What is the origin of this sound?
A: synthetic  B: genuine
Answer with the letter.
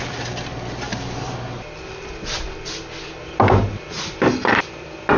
B